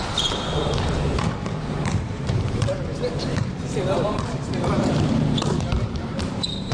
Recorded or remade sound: remade